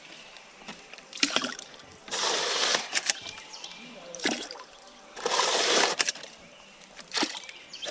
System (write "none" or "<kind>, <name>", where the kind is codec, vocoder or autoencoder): vocoder, BigVGAN v2